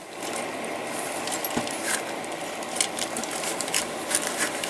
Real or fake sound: real